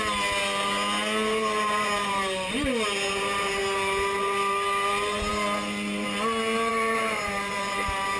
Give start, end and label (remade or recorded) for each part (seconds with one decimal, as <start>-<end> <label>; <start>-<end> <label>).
0.0-8.2 recorded